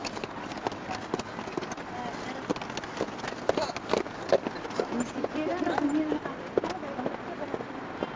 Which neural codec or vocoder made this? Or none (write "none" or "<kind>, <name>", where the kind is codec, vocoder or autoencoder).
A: none